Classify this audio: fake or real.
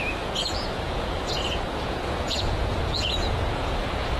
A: fake